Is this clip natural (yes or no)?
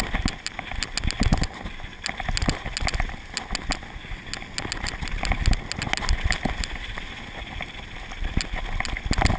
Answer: yes